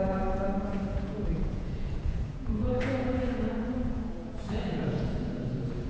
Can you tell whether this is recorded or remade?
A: remade